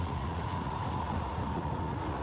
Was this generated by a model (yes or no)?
yes